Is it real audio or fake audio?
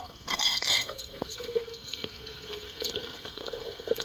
fake